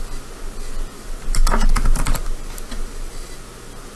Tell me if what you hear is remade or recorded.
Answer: recorded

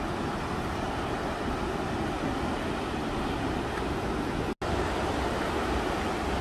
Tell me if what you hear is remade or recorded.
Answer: recorded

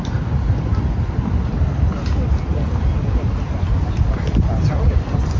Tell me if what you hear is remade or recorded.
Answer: recorded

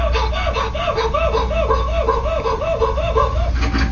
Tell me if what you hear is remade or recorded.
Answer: recorded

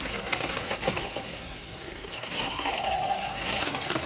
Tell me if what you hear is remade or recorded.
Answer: remade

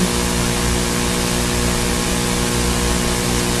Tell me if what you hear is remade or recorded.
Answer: recorded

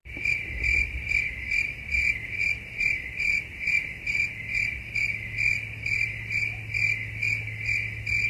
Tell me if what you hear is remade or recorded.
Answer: recorded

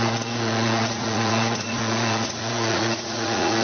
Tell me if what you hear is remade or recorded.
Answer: remade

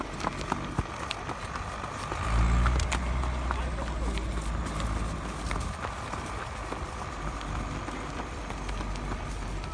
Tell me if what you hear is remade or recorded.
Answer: recorded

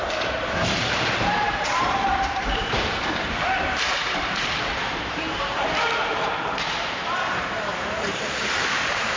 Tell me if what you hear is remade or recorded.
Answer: remade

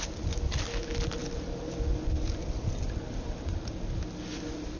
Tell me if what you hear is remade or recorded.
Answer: recorded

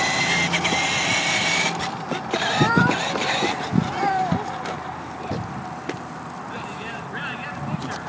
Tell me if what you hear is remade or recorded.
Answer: recorded